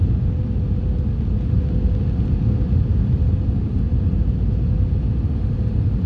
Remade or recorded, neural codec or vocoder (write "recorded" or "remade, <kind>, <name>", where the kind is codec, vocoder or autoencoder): recorded